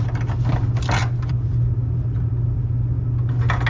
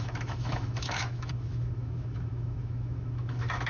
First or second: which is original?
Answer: first